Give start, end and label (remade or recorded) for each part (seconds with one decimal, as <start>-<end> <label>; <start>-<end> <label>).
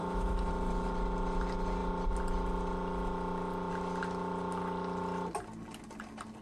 0.0-0.5 remade; 0.5-6.4 recorded